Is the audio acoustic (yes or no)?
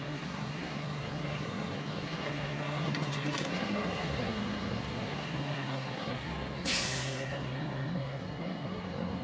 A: no